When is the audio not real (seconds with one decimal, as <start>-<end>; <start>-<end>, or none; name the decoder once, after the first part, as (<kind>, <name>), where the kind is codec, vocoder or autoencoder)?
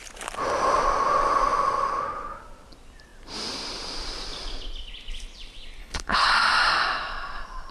5.8-6.3 (codec, HILCodec)